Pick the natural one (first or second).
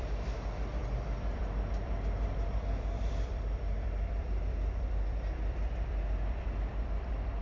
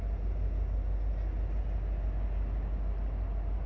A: second